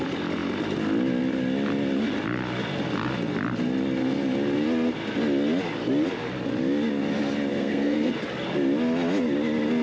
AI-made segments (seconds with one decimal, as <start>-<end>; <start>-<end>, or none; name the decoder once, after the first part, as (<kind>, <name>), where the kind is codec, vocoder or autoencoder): 7.5-8.1 (codec, SNAC)